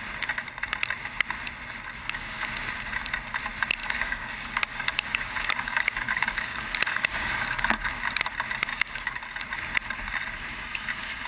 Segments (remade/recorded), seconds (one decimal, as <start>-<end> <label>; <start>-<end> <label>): 0.0-2.0 recorded; 2.0-2.5 remade; 2.5-3.8 recorded; 3.8-7.9 remade; 7.9-8.7 recorded; 8.7-9.2 remade; 9.2-11.3 recorded